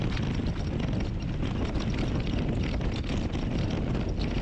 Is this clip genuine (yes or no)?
yes